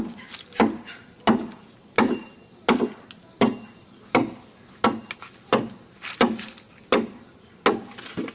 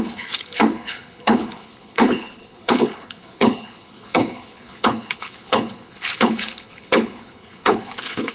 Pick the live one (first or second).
first